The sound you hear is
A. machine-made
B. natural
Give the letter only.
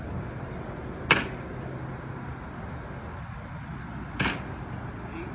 B